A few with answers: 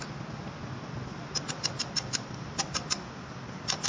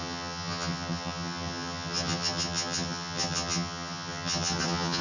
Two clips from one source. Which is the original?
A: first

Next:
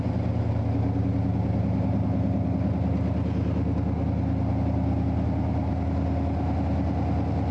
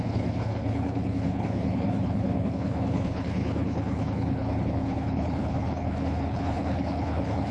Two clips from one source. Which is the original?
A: first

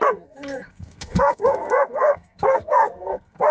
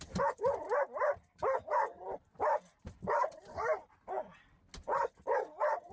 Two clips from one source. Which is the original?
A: second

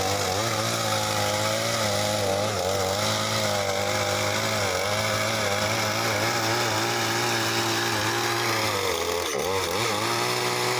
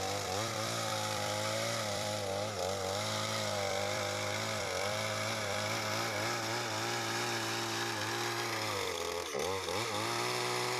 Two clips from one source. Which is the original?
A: first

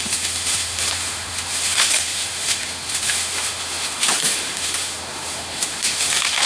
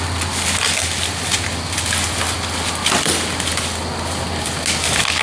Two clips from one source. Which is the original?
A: second